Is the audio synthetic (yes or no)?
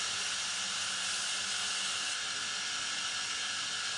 no